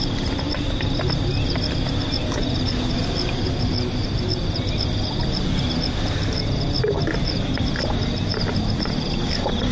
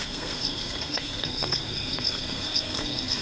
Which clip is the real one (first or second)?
first